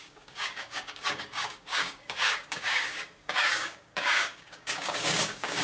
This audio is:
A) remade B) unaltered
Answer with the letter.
A